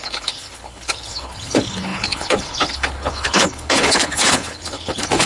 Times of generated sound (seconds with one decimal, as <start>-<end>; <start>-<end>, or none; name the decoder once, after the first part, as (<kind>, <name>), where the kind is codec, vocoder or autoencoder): 0.0-5.3 (codec, HILCodec)